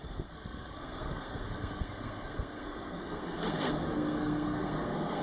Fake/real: fake